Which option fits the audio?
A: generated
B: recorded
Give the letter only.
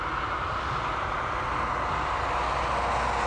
B